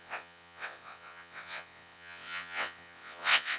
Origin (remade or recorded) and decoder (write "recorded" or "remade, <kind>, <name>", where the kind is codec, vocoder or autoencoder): remade, vocoder, WaveNeXt